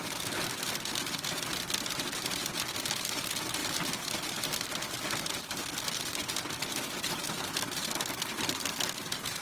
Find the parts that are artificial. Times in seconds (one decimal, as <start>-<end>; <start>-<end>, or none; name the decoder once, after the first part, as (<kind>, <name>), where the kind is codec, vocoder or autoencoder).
none